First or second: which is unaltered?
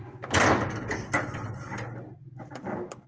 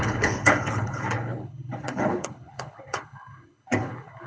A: first